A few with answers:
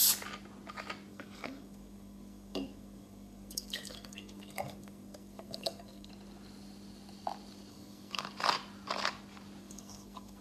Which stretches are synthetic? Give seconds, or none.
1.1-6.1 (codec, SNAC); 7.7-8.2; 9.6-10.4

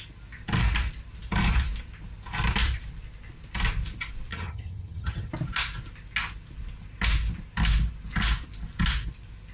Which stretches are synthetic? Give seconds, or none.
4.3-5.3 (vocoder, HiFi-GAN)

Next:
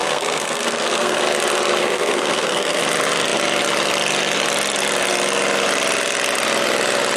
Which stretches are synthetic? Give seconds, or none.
0.0-1.2 (codec, SNAC); 1.8-2.8

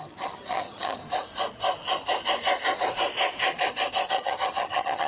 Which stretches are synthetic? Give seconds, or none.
0.0-1.0 (vocoder, HiFi-GAN); 4.1-5.1